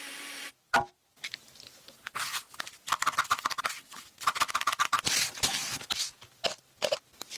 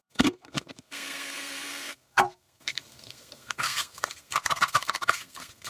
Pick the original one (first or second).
first